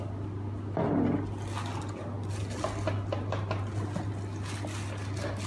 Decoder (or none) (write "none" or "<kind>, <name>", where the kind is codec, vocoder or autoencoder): none